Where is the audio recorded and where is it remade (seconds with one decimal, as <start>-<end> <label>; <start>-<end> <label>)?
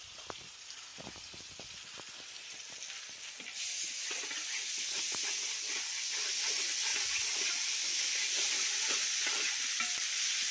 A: 0.0-10.5 recorded